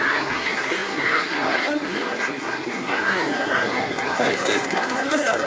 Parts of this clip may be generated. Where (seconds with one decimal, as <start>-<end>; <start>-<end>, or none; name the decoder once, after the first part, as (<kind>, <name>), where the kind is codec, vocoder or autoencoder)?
0.0-5.5 (codec, SNAC)

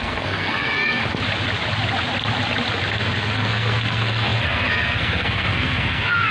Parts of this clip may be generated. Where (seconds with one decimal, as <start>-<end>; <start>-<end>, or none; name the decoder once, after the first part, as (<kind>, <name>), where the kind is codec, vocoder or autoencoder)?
0.0-1.0 (codec, SNAC); 2.9-6.3

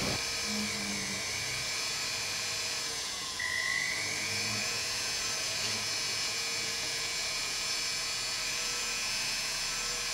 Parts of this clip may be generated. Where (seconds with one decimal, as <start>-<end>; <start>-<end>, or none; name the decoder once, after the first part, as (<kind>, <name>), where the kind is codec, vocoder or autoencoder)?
0.9-10.1 (vocoder, Vocos)

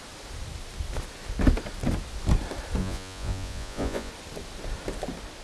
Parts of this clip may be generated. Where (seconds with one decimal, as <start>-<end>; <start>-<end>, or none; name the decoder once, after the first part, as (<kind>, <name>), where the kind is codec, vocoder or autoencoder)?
2.8-4.1 (vocoder, Vocos)

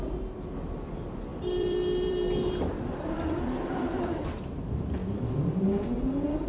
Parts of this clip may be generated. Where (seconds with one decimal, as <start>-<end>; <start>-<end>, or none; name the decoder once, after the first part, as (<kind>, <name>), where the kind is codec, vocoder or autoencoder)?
1.3-4.3 (vocoder, BigVGAN v2)

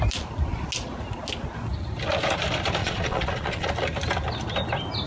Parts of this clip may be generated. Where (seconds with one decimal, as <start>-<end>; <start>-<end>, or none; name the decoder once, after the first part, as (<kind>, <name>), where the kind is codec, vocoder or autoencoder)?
2.8-3.7 (vocoder, Vocos)

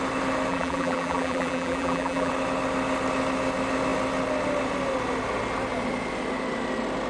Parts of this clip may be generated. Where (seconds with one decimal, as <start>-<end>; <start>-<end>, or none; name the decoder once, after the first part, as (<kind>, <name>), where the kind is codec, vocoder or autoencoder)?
0.5-2.3 (vocoder, BigVGAN v2)